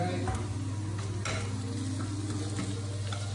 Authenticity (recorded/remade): recorded